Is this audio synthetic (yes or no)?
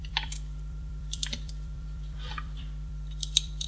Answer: yes